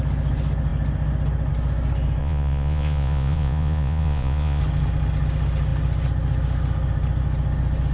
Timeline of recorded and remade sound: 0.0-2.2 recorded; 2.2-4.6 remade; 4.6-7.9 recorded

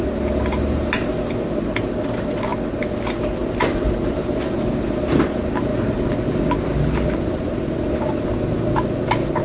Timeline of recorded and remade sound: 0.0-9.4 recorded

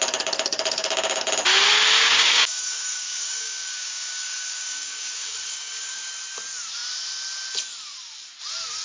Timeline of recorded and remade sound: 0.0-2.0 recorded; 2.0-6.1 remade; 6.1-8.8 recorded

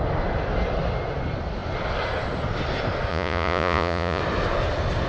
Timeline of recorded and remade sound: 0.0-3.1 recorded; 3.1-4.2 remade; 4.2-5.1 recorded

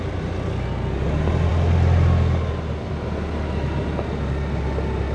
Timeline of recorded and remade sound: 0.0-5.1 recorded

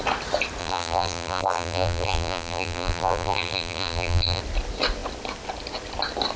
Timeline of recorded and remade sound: 0.0-0.6 recorded; 0.6-4.4 remade; 4.4-6.4 recorded

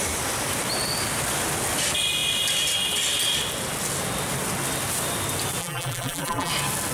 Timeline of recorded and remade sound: 0.0-5.6 recorded; 5.6-6.5 remade; 6.5-6.9 recorded

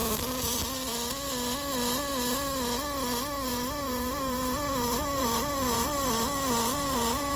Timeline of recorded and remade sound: 0.0-3.5 recorded; 3.5-6.1 remade; 6.1-6.7 recorded; 6.7-7.4 remade